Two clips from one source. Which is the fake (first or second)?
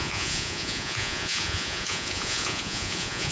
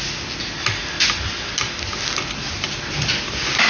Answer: first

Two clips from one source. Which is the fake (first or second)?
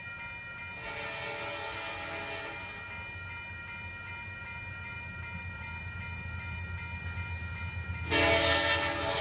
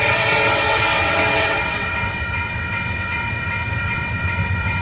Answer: second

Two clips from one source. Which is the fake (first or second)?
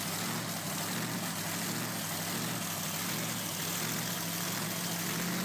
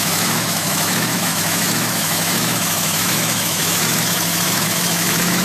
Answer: second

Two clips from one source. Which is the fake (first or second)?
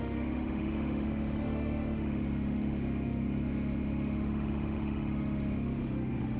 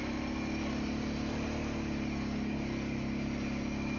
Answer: first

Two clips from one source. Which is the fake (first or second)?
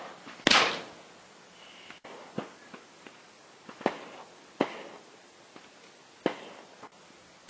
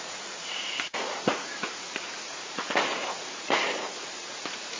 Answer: second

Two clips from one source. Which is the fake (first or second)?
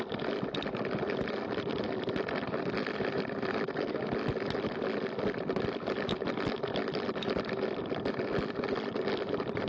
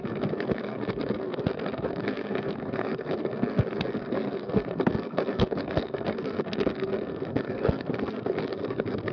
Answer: second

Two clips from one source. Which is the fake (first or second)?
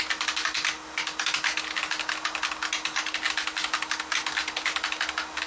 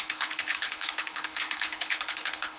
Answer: second